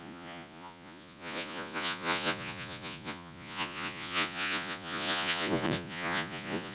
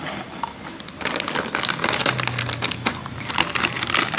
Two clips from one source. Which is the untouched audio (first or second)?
second